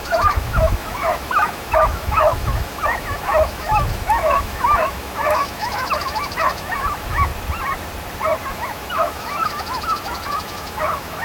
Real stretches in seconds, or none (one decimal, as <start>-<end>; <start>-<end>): 7.3-8.5